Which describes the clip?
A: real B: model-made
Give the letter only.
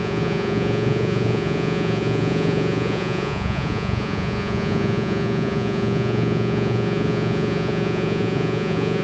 B